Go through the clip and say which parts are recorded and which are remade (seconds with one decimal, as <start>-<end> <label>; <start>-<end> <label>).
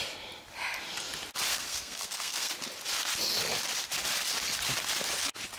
0.0-1.5 recorded; 1.5-2.5 remade; 2.5-5.6 recorded